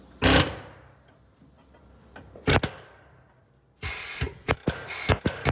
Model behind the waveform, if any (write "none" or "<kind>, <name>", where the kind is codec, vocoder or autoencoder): none